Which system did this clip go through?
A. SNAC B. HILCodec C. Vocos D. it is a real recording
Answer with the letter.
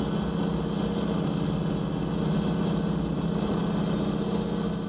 D